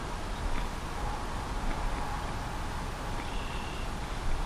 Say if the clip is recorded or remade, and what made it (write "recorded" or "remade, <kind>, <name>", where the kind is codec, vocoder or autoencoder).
recorded